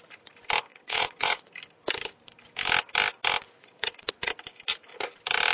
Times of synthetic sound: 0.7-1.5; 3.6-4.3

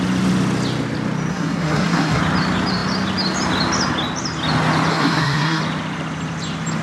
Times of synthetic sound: 1.3-2.2; 4.9-5.6

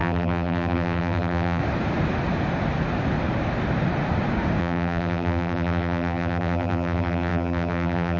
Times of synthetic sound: 0.0-1.6; 4.6-8.2

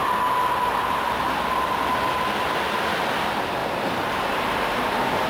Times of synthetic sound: 3.6-5.3

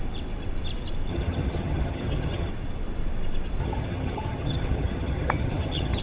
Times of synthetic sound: 1.1-2.5; 3.6-6.0

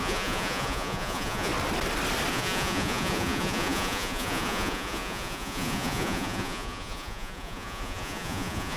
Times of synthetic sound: 0.0-1.5; 2.3-8.8

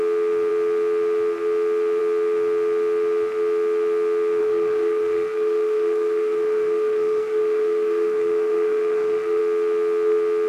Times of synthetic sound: 4.4-9.4